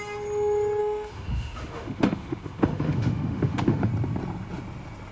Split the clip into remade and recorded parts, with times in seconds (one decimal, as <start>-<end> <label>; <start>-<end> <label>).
0.0-0.8 recorded; 0.8-3.9 remade; 3.9-5.1 recorded